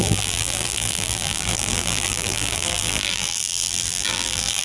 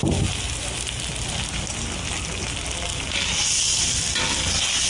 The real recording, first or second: second